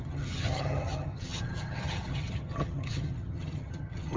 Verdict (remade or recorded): remade